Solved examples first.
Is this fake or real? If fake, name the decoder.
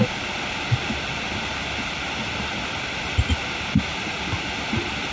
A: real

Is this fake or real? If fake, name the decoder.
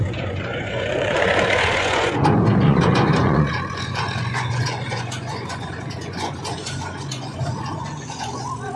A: fake, vocoder, Vocos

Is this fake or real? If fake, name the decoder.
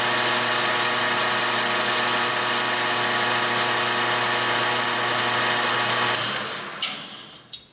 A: real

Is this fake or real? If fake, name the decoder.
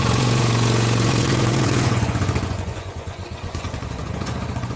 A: fake, vocoder, Vocos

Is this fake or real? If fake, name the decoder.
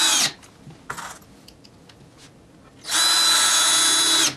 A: real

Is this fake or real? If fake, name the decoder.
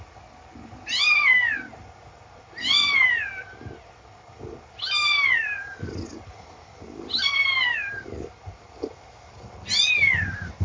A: real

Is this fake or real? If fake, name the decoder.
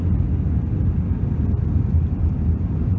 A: real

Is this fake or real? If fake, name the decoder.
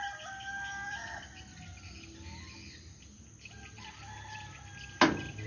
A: real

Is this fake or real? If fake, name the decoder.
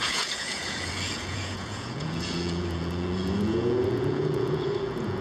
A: fake, vocoder, Vocos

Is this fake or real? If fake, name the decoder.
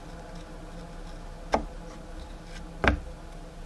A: real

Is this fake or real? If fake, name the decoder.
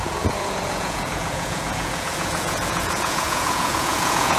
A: fake, vocoder, Vocos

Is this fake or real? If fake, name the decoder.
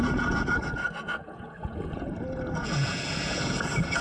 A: fake, vocoder, Vocos